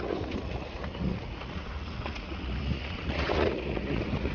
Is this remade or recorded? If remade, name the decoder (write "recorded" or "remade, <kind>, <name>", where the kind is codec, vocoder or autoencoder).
remade, vocoder, Vocos